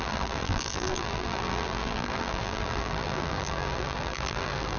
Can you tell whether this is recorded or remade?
remade